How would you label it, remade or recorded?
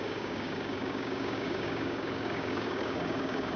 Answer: remade